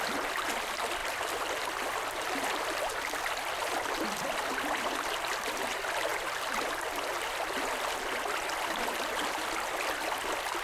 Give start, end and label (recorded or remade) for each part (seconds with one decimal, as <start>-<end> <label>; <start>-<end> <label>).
0.0-10.6 recorded